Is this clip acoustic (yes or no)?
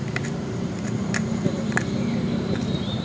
no